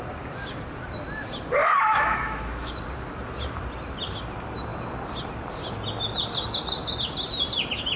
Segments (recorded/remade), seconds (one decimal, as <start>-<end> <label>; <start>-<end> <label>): 0.0-1.6 recorded; 1.6-2.7 remade; 2.7-8.0 recorded